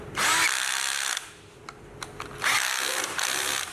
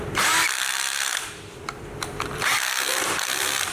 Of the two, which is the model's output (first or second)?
second